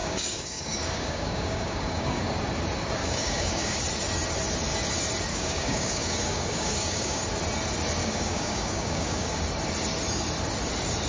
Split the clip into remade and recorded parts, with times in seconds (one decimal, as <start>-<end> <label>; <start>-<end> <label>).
0.0-2.2 remade; 2.2-3.0 recorded; 3.0-3.8 remade; 3.8-5.3 recorded; 5.3-7.2 remade; 7.2-8.0 recorded; 8.0-9.4 remade; 9.4-11.1 recorded